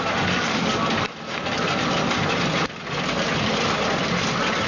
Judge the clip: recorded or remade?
recorded